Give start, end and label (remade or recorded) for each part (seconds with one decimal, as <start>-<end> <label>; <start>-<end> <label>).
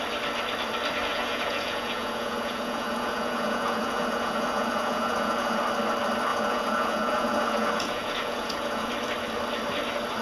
0.0-1.1 recorded; 1.1-5.6 remade; 5.6-6.3 recorded; 6.3-8.9 remade; 8.9-10.2 recorded